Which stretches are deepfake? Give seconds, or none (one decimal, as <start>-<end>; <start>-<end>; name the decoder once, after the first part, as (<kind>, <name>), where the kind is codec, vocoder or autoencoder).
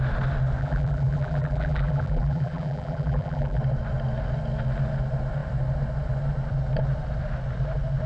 0.6-3.6 (vocoder, BigVGAN v2)